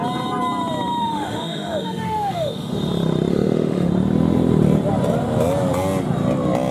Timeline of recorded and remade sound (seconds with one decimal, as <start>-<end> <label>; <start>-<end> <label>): 0.0-1.0 recorded; 1.0-2.7 remade; 2.7-3.3 recorded; 3.3-3.9 remade; 3.9-6.7 recorded